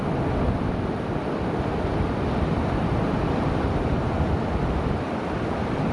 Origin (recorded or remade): recorded